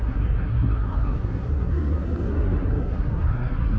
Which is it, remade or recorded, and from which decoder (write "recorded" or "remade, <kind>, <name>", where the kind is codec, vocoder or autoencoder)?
remade, codec, SNAC